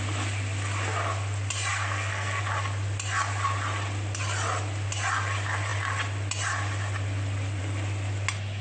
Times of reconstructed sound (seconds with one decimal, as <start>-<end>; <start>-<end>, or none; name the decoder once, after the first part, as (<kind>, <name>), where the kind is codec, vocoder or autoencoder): 1.7-2.4 (codec, SNAC)